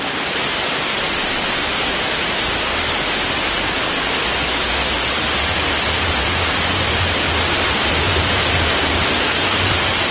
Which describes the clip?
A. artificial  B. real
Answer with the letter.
B